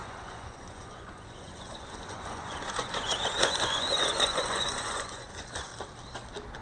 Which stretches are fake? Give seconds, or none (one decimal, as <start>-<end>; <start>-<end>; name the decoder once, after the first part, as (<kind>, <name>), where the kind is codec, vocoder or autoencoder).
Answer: 0.0-5.7 (vocoder, Vocos)